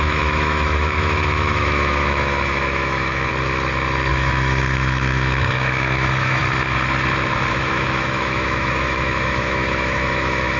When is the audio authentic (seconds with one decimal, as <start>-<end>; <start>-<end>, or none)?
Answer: 3.3-4.1; 6.4-7.5